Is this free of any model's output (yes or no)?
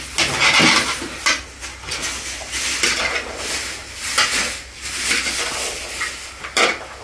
yes